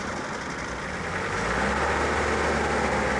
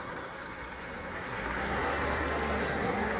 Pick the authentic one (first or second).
first